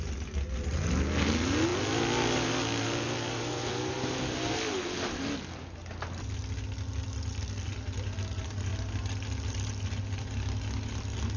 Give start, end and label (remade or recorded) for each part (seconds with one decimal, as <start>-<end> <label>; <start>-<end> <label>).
0.0-1.7 recorded; 1.7-3.8 remade; 3.8-8.7 recorded; 8.7-10.2 remade; 10.2-11.4 recorded